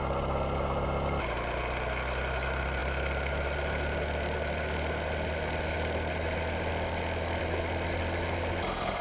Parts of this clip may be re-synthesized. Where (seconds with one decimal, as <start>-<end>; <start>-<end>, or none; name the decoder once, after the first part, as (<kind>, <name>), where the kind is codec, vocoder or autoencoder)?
none